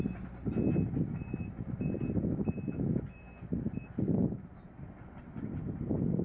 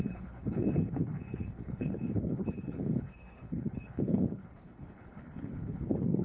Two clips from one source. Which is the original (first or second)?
first